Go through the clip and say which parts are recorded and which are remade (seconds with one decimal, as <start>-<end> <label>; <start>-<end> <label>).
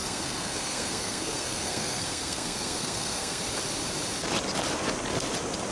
0.0-3.4 remade; 3.4-5.7 recorded